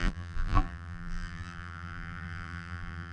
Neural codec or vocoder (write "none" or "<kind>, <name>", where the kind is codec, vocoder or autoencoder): vocoder, BigVGAN v2